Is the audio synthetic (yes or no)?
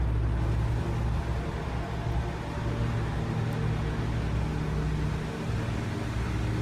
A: no